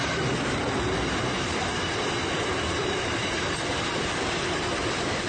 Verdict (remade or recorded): recorded